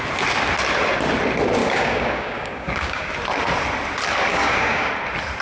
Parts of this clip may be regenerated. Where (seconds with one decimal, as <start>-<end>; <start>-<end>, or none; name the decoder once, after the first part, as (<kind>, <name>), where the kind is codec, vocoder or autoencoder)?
1.6-3.1 (codec, DAC); 4.3-4.9